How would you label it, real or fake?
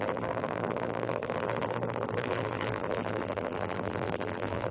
fake